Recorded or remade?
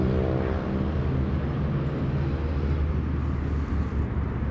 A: recorded